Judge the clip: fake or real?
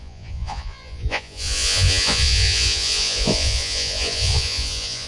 fake